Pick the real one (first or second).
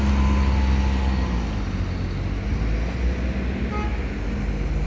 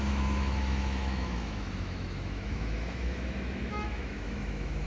first